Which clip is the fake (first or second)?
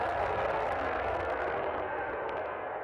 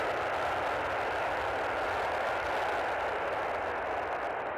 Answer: first